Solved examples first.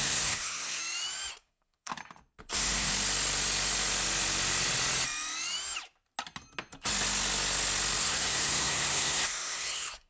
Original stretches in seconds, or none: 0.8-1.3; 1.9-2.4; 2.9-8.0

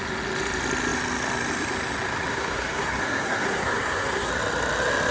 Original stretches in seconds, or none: 0.0-2.3; 4.3-5.1